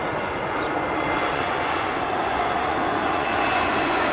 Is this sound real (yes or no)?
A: no